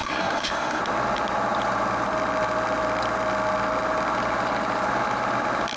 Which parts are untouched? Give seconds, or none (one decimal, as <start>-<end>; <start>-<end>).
0.8-5.8